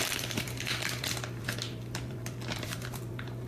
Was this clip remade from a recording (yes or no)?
yes